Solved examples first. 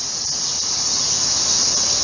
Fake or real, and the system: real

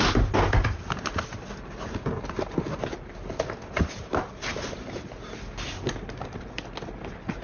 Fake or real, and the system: real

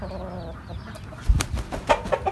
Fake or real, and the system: real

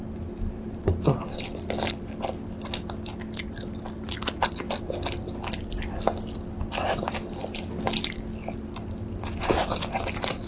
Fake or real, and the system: real